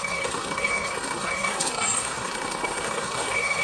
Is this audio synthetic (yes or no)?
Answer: yes